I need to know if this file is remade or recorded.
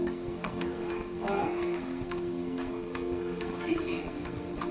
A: remade